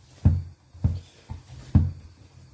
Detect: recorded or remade recorded